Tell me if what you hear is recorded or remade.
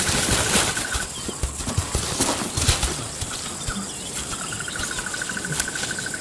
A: recorded